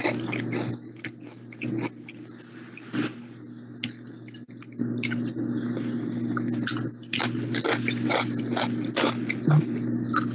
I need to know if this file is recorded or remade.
recorded